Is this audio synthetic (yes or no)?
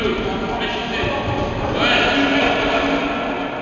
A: no